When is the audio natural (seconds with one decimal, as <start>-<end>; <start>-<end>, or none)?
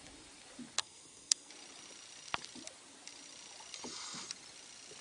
0.0-0.8; 1.5-5.0